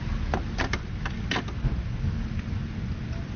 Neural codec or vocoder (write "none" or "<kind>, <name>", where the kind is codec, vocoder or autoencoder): none